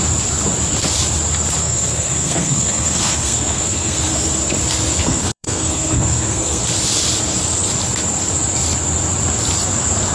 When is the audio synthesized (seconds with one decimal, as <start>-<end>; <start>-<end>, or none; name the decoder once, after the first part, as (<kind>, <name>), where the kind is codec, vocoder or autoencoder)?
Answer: 1.6-4.3 (codec, SNAC); 5.0-6.6